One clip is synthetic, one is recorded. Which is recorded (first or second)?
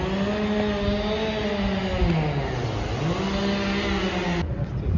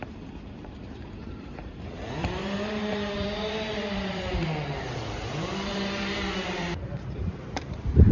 first